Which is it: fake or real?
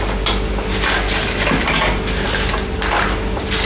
real